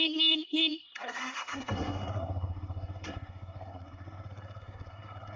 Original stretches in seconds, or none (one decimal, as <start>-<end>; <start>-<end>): none